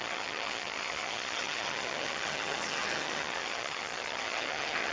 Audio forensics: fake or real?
fake